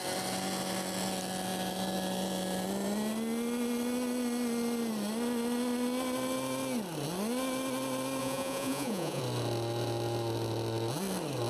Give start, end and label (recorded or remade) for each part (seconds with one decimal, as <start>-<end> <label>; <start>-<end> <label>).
0.0-8.2 recorded; 8.2-9.2 remade; 9.2-11.5 recorded